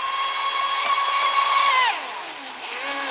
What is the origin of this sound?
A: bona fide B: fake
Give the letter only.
A